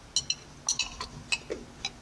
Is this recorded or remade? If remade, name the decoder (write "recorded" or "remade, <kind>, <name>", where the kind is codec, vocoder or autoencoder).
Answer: recorded